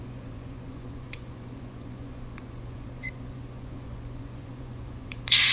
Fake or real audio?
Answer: fake